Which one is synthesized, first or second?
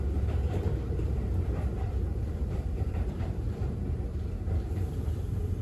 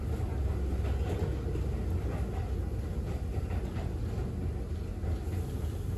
first